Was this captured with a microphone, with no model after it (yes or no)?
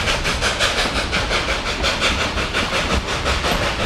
yes